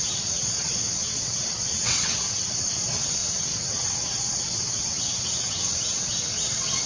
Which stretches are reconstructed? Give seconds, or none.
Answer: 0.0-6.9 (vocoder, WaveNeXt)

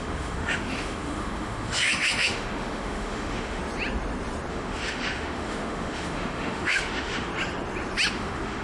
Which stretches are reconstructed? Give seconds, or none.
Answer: 0.0-3.6 (autoencoder, DAC-VAE); 4.5-7.3; 8.1-8.6

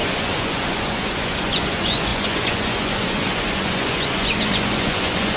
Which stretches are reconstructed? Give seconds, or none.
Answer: 0.0-5.4 (vocoder, Vocos)

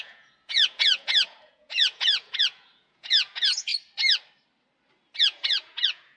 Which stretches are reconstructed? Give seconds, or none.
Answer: 0.0-3.7 (vocoder, Vocos); 5.2-6.2

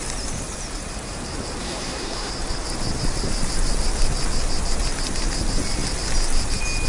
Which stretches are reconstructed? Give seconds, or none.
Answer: 1.6-2.3 (codec, SNAC)

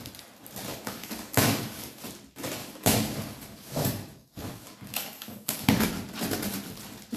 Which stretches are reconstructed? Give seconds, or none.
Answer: 0.7-2.0 (codec, DAC); 2.6-5.9

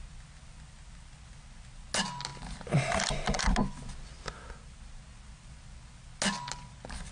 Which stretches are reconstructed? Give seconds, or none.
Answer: none